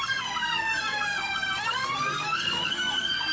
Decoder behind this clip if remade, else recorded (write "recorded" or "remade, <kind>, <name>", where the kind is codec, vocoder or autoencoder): remade, codec, SNAC